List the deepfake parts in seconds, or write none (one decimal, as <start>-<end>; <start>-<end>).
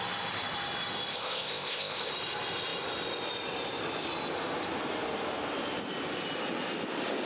1.1-2.1